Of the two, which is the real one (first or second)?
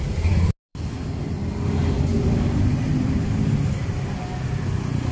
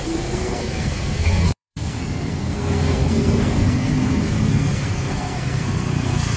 first